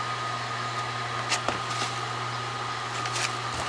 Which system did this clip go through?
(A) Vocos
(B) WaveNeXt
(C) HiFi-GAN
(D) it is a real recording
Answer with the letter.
D